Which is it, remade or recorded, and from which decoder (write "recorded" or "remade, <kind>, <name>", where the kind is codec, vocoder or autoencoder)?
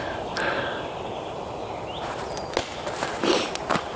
recorded